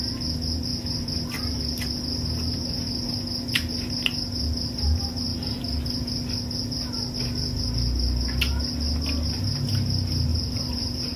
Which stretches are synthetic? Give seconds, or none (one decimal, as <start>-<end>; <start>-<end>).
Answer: 10.3-11.2